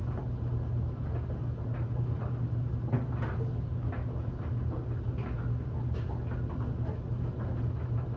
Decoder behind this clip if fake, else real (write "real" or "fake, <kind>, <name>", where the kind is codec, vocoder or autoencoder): real